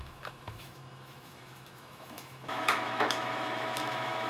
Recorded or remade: remade